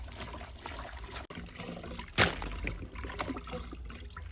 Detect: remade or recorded recorded